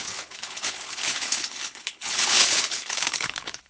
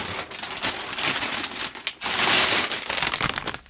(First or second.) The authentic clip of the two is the second